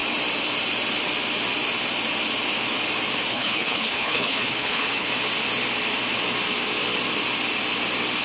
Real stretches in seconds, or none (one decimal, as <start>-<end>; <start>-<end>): 0.0-3.3; 5.1-8.2